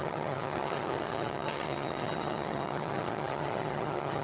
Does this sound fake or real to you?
fake